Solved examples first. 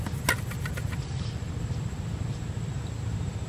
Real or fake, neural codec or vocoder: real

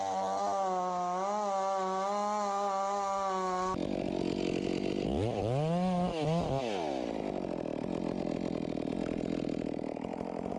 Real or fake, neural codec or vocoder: real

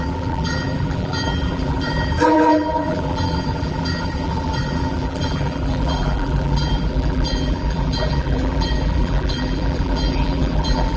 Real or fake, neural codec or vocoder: fake, vocoder, BigVGAN v2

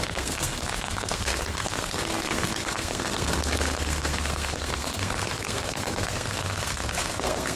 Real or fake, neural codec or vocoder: fake, codec, SNAC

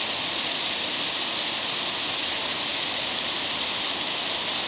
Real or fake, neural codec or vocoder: real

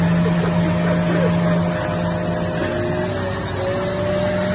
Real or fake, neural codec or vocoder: real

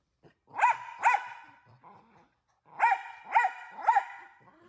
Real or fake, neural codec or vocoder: fake, vocoder, BigVGAN v2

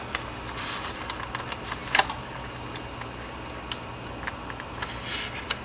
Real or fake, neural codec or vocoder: real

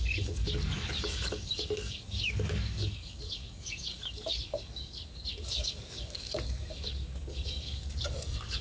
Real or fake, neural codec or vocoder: fake, codec, DAC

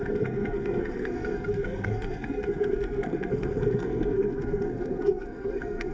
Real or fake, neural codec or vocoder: fake, codec, SNAC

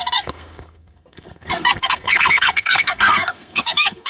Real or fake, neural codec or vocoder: fake, codec, SNAC